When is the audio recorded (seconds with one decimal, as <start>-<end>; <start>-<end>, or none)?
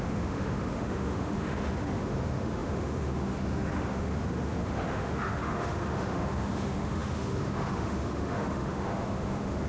none